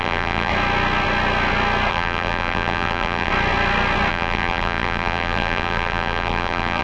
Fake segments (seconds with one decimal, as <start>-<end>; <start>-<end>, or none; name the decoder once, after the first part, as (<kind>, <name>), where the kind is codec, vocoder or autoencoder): 0.0-0.5 (vocoder, BigVGAN v2); 1.9-3.3; 4.1-6.8